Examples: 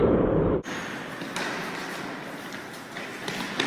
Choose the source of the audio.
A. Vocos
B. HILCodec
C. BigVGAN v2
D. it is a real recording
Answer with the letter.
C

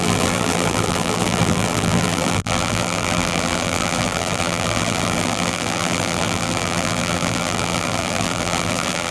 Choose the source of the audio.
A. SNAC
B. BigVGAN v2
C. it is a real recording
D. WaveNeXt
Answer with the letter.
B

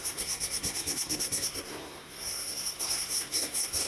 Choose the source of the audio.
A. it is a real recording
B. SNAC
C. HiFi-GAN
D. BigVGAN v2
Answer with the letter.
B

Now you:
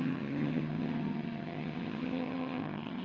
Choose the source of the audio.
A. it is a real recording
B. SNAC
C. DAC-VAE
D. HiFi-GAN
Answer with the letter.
D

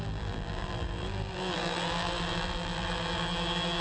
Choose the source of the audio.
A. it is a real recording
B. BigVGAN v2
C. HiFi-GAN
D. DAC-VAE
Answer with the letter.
B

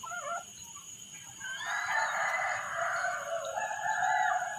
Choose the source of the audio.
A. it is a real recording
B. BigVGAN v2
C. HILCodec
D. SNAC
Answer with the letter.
B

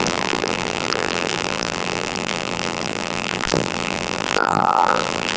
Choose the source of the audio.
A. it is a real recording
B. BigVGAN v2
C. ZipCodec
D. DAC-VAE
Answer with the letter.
B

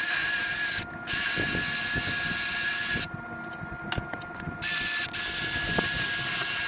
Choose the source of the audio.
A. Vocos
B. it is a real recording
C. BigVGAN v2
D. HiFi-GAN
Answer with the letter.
B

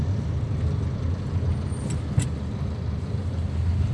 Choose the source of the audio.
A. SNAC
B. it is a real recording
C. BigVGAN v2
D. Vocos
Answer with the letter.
B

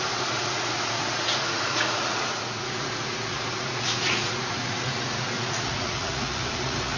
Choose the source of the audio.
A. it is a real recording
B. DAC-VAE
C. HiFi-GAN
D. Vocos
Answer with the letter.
D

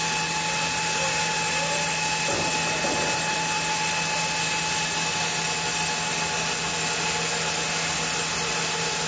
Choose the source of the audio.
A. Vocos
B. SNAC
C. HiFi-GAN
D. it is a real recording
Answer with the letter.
D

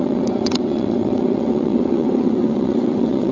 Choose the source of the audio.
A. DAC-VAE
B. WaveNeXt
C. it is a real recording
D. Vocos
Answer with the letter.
B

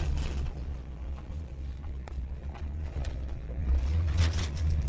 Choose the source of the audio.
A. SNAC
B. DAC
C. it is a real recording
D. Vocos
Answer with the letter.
D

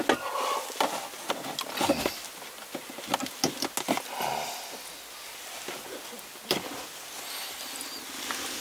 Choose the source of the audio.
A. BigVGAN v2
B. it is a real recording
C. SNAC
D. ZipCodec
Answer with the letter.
B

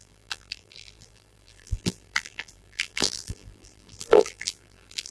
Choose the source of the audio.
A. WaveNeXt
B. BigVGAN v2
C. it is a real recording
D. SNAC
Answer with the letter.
B